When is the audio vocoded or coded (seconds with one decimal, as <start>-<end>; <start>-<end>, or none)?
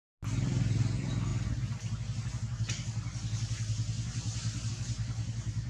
none